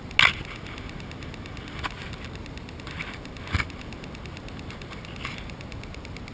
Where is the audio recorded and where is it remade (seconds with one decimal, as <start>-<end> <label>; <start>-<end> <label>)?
0.0-6.3 recorded